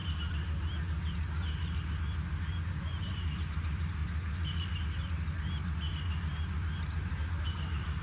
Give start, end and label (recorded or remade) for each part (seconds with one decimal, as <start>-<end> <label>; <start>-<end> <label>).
0.0-2.6 recorded; 2.6-4.0 remade; 4.0-7.2 recorded; 7.2-8.0 remade